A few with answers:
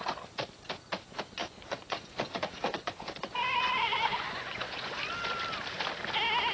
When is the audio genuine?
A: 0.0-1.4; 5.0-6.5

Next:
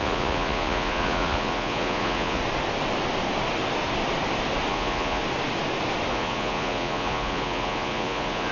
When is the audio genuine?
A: 2.4-4.7; 5.2-6.1

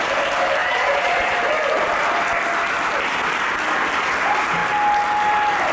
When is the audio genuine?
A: 0.0-0.6; 1.3-5.7

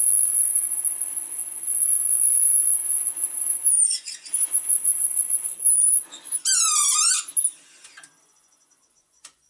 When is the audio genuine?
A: 0.5-1.8; 2.8-3.9; 5.5-8.2

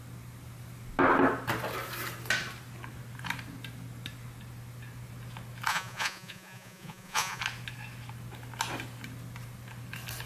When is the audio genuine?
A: 0.0-5.7; 7.4-10.3

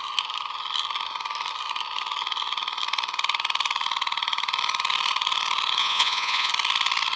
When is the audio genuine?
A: 0.0-5.8; 6.5-7.2

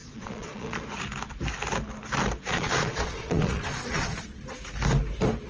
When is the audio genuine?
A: 0.8-2.5; 4.4-5.5